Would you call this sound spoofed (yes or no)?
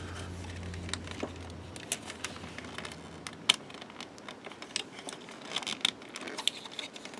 no